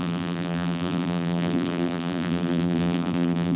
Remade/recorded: remade